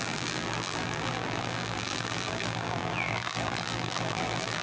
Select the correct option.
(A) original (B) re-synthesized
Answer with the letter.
B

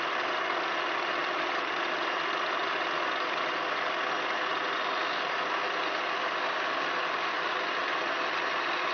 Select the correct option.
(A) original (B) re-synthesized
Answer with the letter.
A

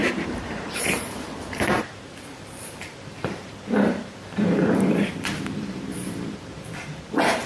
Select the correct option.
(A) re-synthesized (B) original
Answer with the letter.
A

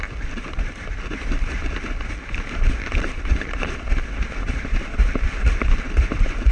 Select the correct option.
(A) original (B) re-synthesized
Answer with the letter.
B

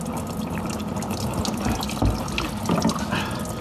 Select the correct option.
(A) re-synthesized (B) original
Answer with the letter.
B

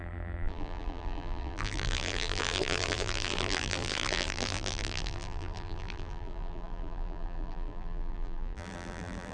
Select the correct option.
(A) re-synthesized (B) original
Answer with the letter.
A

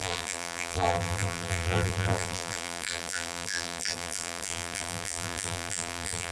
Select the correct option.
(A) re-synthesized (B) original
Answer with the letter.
A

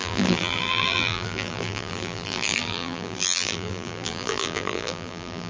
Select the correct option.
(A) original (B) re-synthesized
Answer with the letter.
B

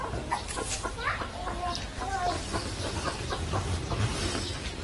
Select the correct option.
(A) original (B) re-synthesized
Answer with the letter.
A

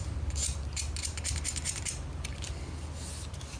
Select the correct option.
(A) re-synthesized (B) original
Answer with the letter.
B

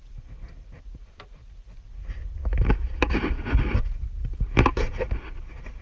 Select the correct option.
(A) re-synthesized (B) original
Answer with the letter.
B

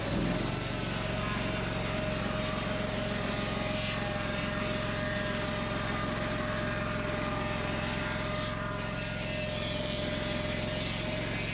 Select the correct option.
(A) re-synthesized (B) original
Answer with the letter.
B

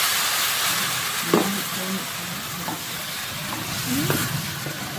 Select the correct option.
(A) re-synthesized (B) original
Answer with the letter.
B